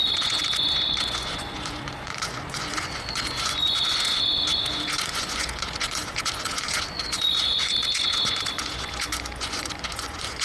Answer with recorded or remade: remade